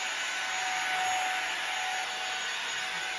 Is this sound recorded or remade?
recorded